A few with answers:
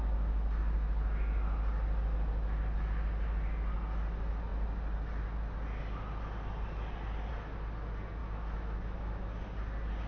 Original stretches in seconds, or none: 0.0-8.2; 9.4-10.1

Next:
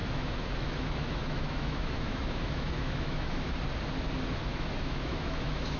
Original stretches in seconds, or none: 3.5-4.5

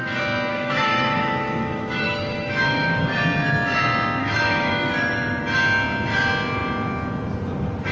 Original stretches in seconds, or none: 0.0-0.5; 3.0-4.2; 5.4-7.9

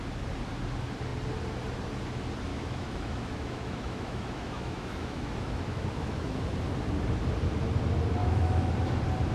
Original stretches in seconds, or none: 0.0-2.5; 6.4-8.2; 8.7-9.3

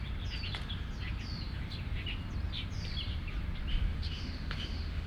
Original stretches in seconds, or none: 0.0-3.7

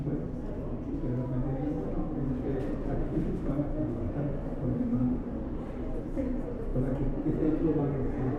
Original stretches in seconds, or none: 0.0-3.0; 3.5-4.7; 5.3-8.4

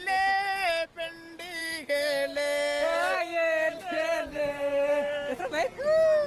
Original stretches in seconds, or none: 0.0-1.6; 5.4-6.3

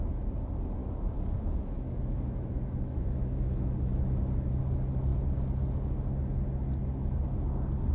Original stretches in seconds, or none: 0.0-0.8; 4.1-7.9